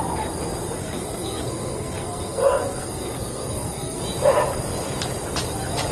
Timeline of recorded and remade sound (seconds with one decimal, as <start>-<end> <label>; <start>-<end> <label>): 0.0-0.8 recorded; 0.8-4.0 remade; 4.0-5.9 recorded